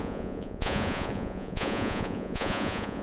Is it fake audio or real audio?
fake